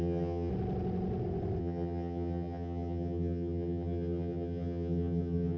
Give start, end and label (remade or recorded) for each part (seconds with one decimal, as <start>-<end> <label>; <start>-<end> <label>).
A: 0.0-0.5 remade; 0.5-1.6 recorded; 1.6-5.6 remade